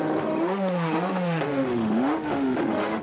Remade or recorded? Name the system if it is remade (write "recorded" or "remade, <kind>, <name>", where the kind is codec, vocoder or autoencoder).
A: remade, autoencoder, DAC-VAE